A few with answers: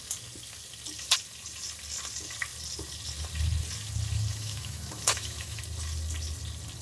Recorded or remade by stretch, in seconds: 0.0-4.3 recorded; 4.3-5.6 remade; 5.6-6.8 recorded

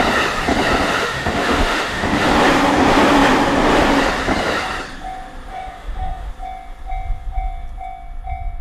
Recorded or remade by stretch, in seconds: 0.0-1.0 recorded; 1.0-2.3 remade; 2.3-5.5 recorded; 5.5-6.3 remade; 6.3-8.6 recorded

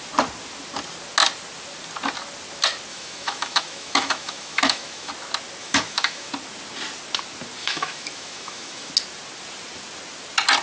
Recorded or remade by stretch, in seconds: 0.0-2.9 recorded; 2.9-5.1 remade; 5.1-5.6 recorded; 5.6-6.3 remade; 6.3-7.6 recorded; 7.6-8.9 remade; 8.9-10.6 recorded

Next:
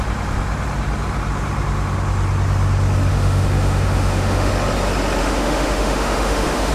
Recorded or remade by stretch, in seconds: 0.0-3.1 recorded; 3.1-4.5 remade; 4.5-5.2 recorded; 5.2-6.7 remade

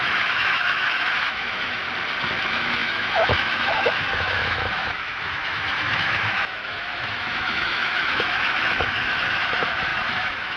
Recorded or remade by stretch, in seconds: 0.0-1.8 remade; 1.8-2.4 recorded; 2.4-10.6 remade